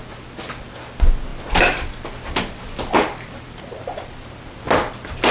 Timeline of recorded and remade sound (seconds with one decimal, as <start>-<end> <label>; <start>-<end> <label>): 0.0-5.3 recorded